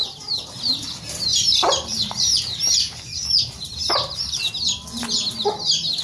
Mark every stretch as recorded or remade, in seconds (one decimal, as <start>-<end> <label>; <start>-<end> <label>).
0.0-0.5 remade; 0.5-1.3 recorded; 1.3-4.5 remade; 4.5-6.0 recorded